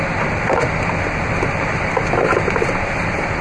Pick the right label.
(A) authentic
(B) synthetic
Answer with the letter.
A